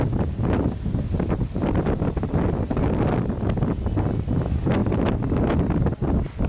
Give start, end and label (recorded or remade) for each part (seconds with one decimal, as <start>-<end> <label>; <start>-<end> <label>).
0.0-6.5 recorded